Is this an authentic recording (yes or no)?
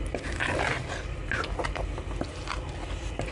yes